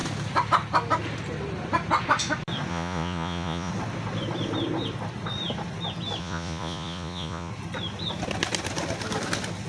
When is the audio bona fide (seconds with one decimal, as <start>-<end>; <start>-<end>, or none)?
0.0-2.7; 3.7-6.2; 7.5-9.7